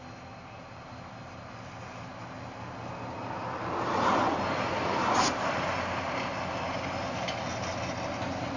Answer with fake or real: real